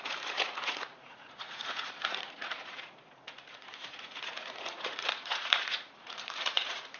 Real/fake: fake